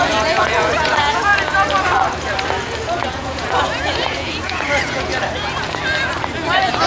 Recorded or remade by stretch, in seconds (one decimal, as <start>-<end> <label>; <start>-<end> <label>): 0.0-1.3 remade; 1.3-3.1 recorded; 3.1-5.1 remade; 5.1-6.9 recorded